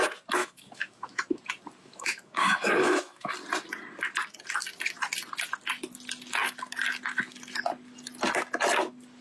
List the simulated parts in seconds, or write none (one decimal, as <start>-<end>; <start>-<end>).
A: 0.4-1.2; 1.8-3.3